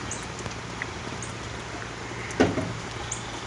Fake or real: real